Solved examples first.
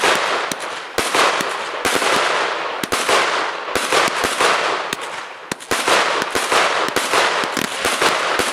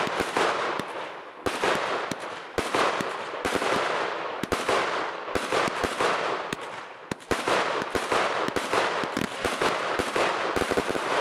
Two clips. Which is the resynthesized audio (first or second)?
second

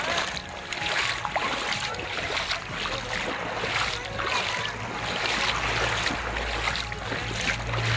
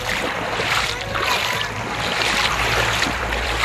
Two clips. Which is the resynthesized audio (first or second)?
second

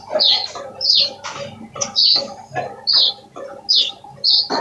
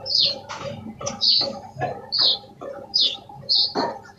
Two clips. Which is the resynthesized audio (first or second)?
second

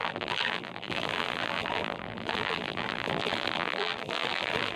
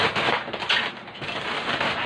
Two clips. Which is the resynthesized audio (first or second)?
first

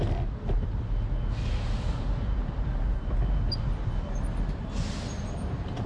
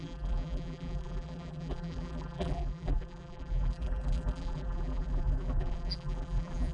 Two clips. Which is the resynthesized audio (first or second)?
second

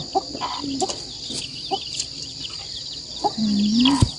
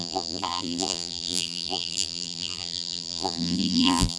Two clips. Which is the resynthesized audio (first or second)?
second